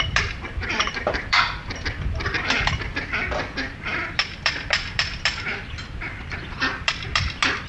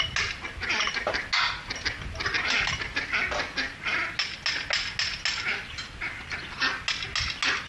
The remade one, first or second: first